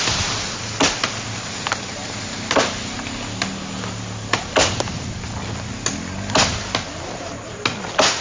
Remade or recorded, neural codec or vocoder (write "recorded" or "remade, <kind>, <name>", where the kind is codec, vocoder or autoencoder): recorded